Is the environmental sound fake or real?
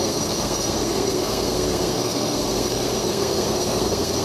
fake